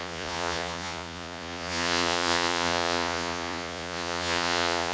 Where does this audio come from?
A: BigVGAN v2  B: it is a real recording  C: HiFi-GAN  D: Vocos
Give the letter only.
D